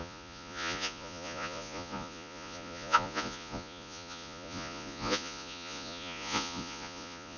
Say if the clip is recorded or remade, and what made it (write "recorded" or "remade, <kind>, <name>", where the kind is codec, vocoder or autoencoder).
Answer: remade, vocoder, Vocos